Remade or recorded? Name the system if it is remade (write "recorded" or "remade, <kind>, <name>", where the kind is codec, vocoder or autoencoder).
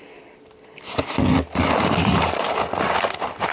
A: recorded